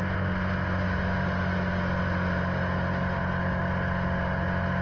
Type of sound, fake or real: real